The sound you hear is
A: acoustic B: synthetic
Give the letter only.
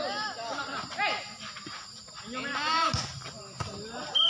A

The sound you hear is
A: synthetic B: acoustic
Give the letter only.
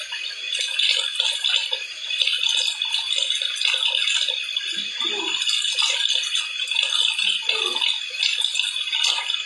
B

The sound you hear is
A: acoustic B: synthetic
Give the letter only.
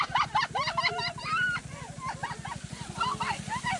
A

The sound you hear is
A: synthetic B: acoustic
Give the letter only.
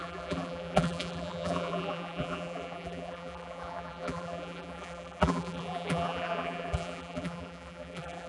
A